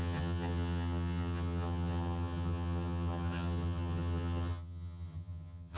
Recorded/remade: remade